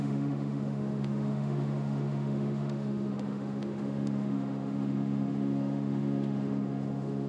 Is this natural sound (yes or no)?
no